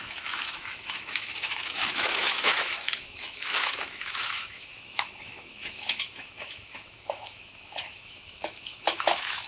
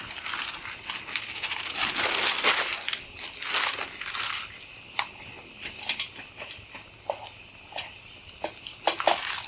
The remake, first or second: first